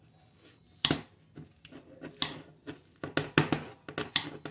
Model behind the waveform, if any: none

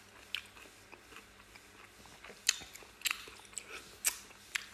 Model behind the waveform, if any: none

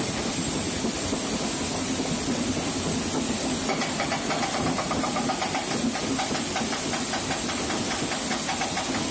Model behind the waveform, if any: none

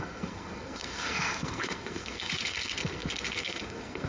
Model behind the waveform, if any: codec, SNAC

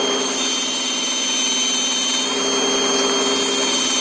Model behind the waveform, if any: none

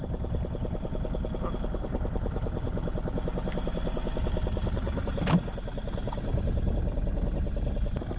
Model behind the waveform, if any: none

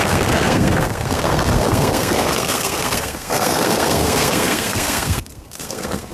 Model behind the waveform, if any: codec, SNAC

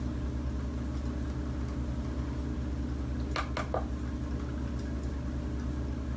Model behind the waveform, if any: none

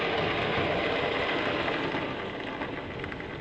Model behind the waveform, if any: none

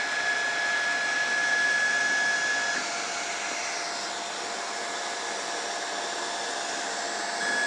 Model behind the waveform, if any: none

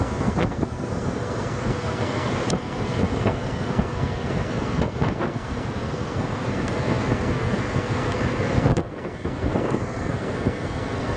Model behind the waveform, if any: codec, SNAC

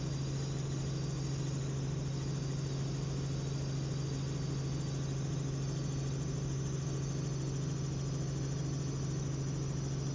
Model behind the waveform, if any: none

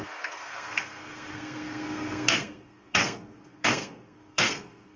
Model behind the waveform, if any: codec, SNAC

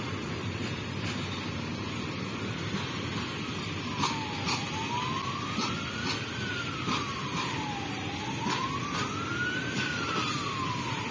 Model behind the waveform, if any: none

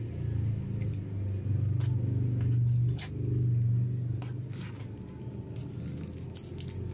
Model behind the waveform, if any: none